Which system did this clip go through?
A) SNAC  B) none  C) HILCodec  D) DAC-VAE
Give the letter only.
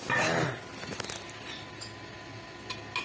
B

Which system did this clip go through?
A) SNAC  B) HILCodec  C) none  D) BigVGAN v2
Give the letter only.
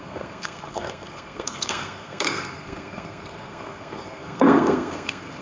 A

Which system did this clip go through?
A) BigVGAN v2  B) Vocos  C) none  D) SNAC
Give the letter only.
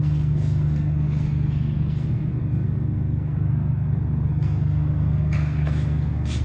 D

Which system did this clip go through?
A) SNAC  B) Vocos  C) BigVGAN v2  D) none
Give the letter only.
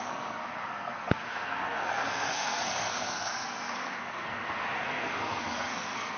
A